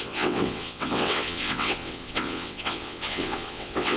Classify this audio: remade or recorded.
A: remade